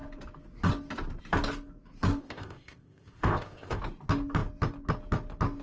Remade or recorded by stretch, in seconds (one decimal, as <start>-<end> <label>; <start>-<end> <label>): 0.0-2.2 recorded; 2.2-3.8 remade; 3.8-5.6 recorded